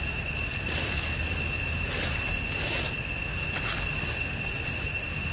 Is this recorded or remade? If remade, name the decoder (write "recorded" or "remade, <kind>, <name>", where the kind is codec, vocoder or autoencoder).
recorded